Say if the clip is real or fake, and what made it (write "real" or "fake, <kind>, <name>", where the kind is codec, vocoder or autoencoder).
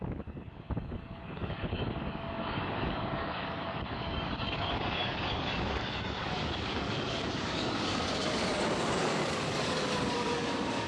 fake, codec, DAC